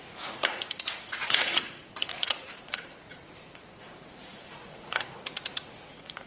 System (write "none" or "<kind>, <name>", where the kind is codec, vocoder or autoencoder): vocoder, Vocos